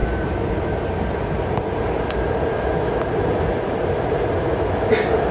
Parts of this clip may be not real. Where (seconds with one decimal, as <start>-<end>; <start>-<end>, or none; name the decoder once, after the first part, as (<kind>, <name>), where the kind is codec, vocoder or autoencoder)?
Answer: none